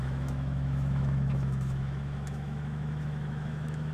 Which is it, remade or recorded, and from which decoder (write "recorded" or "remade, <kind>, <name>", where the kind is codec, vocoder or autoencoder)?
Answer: remade, autoencoder, DAC-VAE